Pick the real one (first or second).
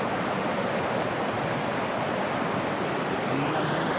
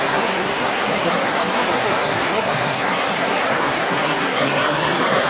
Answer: first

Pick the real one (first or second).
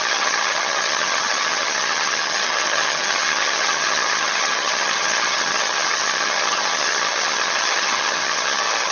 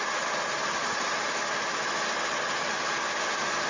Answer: second